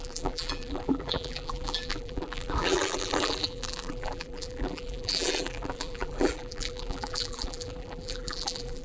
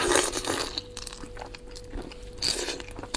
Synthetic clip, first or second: first